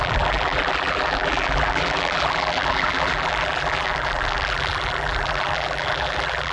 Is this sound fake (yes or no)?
yes